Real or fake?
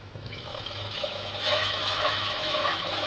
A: fake